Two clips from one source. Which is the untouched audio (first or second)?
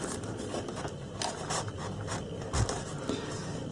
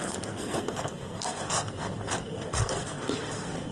first